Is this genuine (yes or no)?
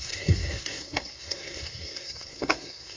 no